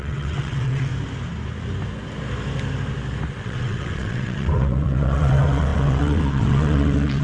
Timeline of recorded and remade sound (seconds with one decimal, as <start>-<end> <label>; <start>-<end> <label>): 0.0-0.9 remade; 0.9-3.4 recorded; 3.4-7.2 remade